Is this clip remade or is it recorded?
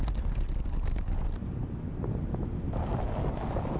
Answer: recorded